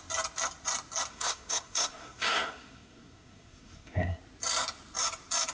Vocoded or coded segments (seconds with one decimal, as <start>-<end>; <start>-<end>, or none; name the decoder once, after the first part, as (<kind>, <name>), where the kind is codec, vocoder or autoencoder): 1.1-4.2 (codec, SNAC)